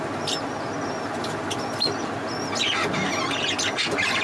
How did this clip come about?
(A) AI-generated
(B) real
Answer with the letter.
B